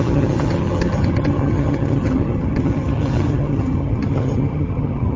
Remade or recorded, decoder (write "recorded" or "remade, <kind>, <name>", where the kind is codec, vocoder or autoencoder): remade, vocoder, HiFi-GAN